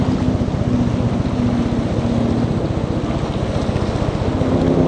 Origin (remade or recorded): recorded